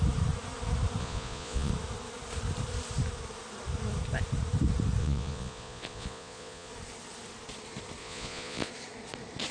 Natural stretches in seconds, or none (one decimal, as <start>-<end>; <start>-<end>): 0.0-1.0; 1.7-5.0; 6.7-8.0; 8.7-9.5